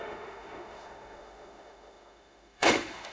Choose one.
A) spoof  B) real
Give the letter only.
A